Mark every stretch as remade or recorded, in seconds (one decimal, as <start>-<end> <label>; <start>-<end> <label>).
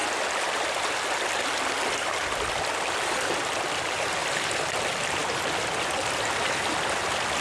0.0-7.4 recorded